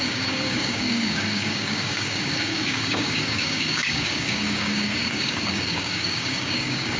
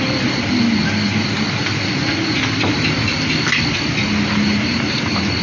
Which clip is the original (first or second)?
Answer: second